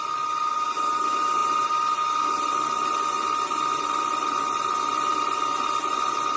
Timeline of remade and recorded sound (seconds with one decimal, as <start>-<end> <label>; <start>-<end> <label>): 0.0-6.4 recorded